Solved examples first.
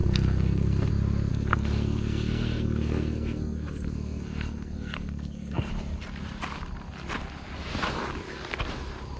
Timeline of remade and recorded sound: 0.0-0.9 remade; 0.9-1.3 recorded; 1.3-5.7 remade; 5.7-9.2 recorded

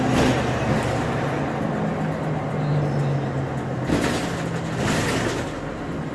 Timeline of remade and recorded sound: 0.0-6.1 recorded

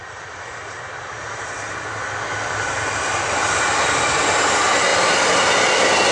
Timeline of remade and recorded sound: 0.0-1.2 remade; 1.2-4.9 recorded; 4.9-5.5 remade; 5.5-6.1 recorded